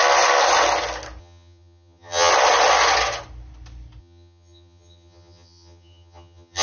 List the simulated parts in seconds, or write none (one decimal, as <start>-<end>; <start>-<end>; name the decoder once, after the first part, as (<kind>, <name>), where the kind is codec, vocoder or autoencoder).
1.2-2.3 (vocoder, HiFi-GAN); 4.0-6.6